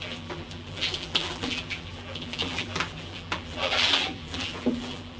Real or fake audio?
fake